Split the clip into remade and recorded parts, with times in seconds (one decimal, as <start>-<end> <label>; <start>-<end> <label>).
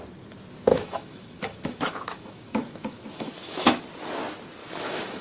0.0-0.7 recorded; 0.7-3.8 remade; 3.8-4.6 recorded; 4.6-5.2 remade